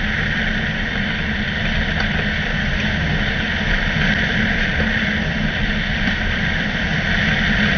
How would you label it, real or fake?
fake